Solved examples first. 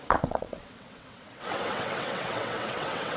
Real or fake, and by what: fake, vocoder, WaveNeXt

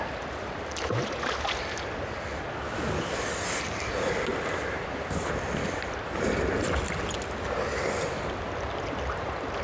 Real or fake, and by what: real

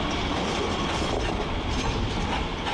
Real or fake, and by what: real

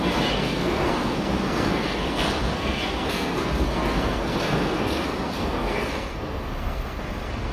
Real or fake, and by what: fake, codec, SNAC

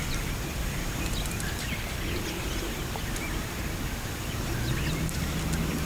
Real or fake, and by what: real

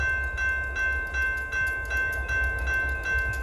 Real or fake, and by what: real